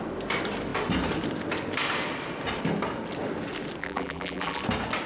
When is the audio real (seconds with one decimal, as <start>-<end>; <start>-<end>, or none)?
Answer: 0.0-3.8; 4.6-5.1